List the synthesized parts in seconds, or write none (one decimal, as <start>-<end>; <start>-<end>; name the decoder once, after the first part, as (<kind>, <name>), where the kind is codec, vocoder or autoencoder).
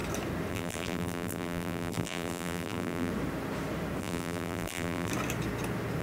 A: 0.5-3.1 (vocoder, BigVGAN v2); 4.0-5.1